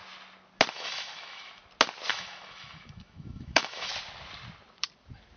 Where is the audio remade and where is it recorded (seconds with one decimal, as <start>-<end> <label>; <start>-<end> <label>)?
0.0-0.7 recorded; 0.7-1.6 remade; 1.6-2.1 recorded; 2.1-3.9 remade; 3.9-5.4 recorded